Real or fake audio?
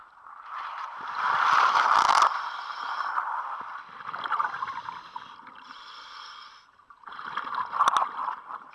real